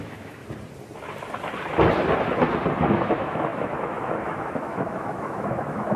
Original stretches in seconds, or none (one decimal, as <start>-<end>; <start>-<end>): 0.4-2.9